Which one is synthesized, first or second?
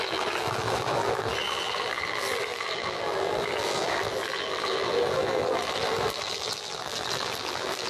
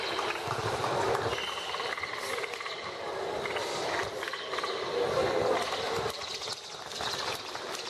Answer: first